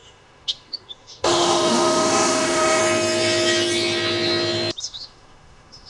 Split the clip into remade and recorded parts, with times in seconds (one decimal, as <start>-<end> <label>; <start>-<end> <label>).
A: 0.0-2.8 remade; 2.8-4.8 recorded; 4.8-5.9 remade